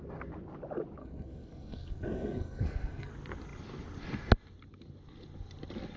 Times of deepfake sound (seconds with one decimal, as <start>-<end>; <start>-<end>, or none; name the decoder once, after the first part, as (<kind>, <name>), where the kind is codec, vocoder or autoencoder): 1.0-3.1 (codec, SNAC)